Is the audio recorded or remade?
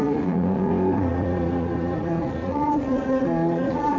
remade